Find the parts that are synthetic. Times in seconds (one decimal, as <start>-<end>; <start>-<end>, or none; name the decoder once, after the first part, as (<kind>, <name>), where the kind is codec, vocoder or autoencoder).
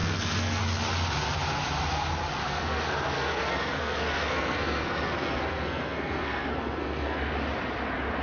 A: 0.0-0.6 (codec, SNAC); 2.4-7.3